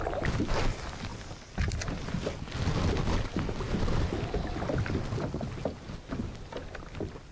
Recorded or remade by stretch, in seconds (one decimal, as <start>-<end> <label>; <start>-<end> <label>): 0.0-7.3 recorded